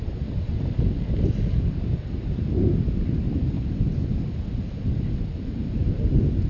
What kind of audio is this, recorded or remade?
recorded